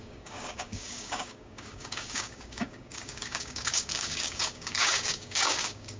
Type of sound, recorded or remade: remade